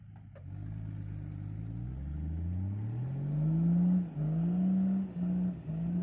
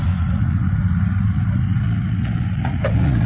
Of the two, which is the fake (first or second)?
second